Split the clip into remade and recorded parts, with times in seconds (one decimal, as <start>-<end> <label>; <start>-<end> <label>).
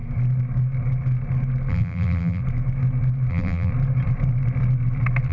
0.0-1.7 recorded; 1.7-2.4 remade; 2.4-3.3 recorded; 3.3-3.7 remade; 3.7-5.3 recorded